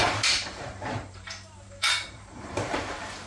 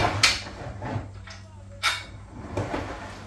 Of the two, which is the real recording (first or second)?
second